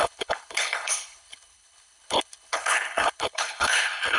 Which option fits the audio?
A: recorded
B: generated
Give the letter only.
B